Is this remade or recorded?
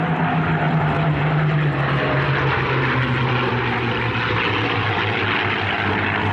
recorded